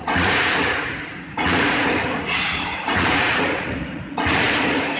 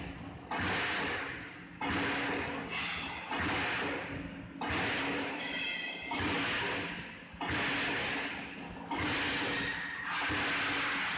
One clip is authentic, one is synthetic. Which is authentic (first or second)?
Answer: second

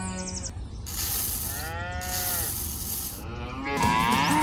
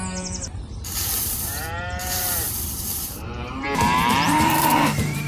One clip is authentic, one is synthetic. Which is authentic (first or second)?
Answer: first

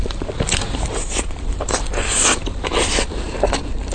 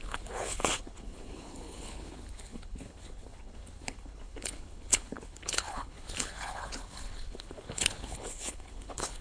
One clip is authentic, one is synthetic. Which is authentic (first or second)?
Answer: first